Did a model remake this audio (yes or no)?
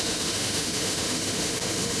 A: yes